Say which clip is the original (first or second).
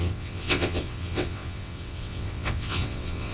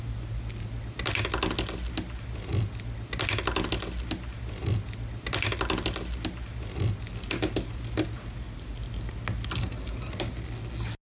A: second